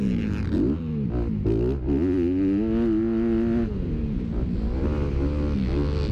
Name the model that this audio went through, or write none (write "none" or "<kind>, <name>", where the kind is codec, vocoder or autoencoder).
none